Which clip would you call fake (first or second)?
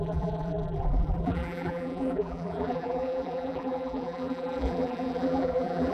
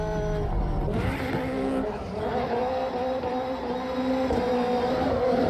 first